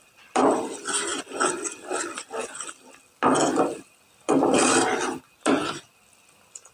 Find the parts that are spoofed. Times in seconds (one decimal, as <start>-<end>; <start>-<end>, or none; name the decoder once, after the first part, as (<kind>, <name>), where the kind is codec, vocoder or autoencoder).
none